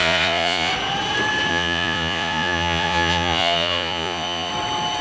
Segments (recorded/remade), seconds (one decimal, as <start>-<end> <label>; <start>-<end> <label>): 0.0-0.7 remade; 0.7-1.5 recorded; 1.5-4.5 remade; 4.5-5.0 recorded